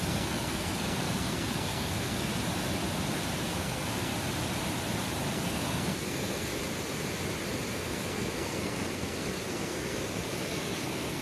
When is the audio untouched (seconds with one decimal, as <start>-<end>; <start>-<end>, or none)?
2.3-3.4; 4.1-5.3; 6.5-7.7